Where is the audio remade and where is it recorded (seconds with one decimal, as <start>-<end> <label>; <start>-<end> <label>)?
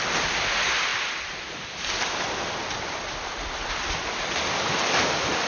0.0-5.5 recorded